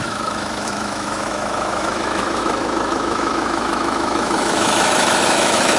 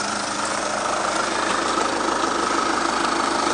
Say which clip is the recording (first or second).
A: second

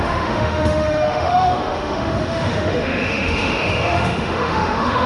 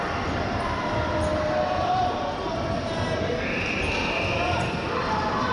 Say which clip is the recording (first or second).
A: second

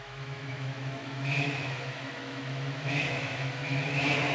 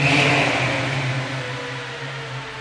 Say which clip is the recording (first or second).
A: second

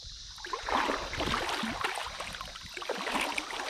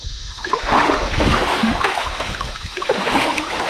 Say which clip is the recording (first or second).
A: first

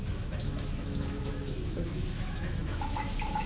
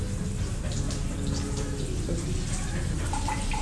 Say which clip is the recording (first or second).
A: second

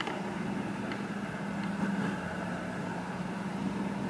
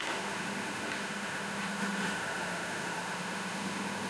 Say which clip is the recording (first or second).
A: first